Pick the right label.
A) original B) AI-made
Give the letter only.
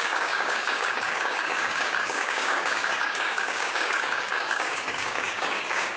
B